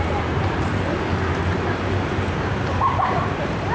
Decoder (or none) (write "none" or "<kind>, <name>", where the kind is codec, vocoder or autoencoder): vocoder, BigVGAN v2